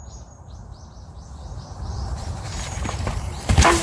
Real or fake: fake